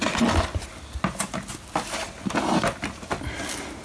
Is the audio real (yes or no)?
yes